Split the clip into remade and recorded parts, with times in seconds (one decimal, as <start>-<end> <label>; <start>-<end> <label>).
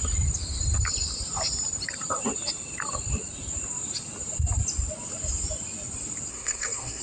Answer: 0.0-6.3 recorded; 6.3-7.0 remade